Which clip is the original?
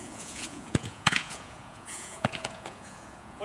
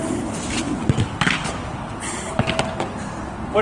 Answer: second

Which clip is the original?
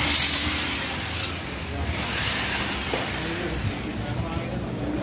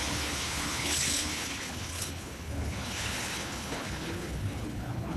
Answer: first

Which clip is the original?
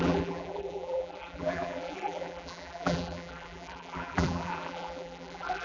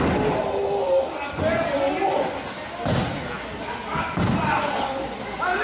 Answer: second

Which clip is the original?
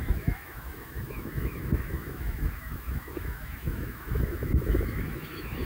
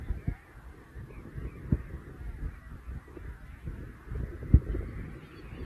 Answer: second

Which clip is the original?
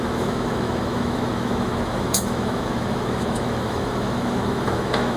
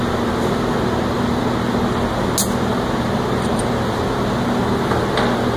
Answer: second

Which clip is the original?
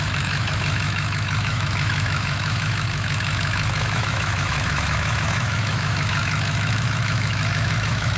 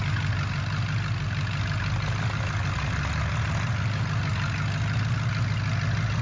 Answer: second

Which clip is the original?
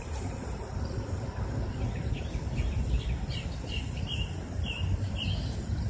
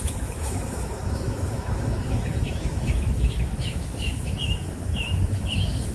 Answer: first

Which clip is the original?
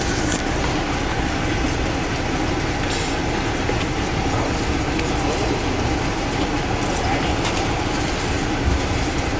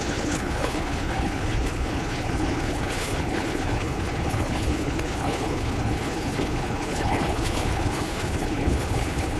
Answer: first